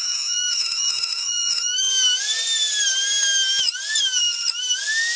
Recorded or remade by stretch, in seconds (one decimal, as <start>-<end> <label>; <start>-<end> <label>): 0.0-1.9 remade; 1.9-5.2 recorded